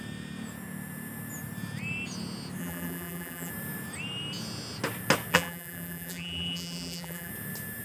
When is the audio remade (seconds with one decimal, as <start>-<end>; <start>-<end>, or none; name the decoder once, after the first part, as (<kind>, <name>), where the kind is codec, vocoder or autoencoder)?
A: 2.6-3.5 (vocoder, BigVGAN v2); 5.3-7.3